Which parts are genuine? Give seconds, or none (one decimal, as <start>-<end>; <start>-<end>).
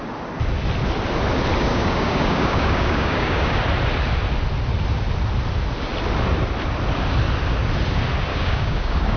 0.0-1.7; 3.6-8.3